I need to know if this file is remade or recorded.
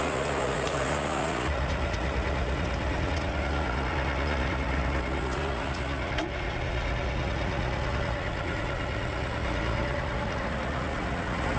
remade